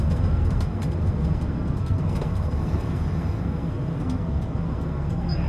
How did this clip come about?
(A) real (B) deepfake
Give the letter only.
B